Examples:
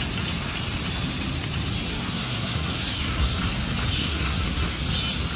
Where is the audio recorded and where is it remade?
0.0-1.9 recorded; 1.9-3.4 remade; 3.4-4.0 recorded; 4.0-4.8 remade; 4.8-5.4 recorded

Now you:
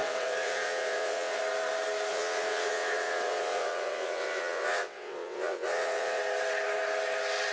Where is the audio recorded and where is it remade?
0.0-1.4 remade; 1.4-2.1 recorded; 2.1-6.2 remade; 6.2-7.5 recorded